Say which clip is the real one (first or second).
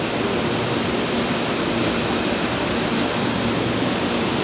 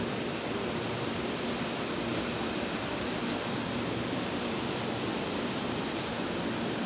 first